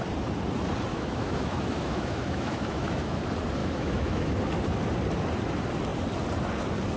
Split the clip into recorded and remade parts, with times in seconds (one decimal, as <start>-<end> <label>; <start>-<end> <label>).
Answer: 0.0-0.9 recorded; 0.9-3.2 remade; 3.2-3.6 recorded; 3.6-4.4 remade; 4.4-7.0 recorded